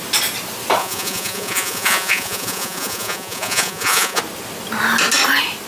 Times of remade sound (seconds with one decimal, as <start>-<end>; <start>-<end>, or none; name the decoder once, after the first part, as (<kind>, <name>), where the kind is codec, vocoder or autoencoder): 0.8-4.2 (vocoder, Vocos)